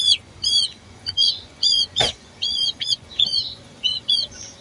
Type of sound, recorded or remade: remade